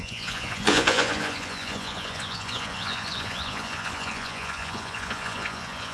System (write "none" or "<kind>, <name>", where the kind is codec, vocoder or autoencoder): vocoder, Vocos